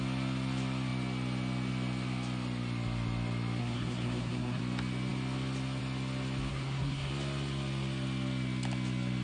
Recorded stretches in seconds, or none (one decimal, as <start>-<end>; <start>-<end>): 0.0-3.6; 4.6-6.5; 7.1-9.2